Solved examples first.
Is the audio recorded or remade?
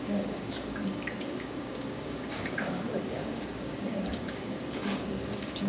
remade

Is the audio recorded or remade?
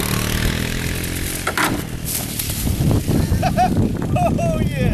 recorded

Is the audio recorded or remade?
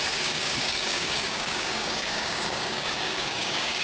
remade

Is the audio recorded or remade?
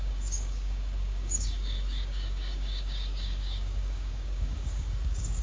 remade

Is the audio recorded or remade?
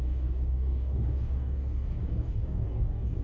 remade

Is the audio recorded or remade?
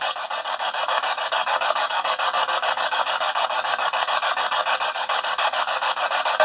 remade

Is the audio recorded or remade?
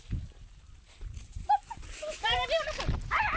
recorded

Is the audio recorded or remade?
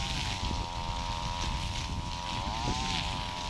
recorded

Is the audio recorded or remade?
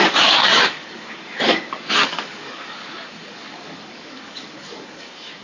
remade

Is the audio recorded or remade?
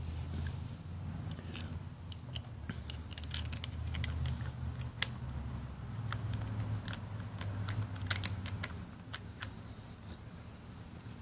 recorded